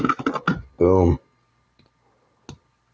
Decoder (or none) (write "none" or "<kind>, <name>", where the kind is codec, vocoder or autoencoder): none